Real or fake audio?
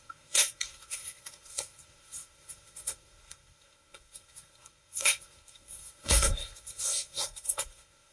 fake